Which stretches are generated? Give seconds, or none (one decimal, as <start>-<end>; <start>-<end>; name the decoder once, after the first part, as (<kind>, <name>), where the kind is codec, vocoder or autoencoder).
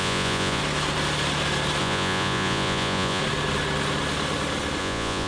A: 0.0-0.6 (vocoder, Vocos); 1.8-3.2; 4.8-5.3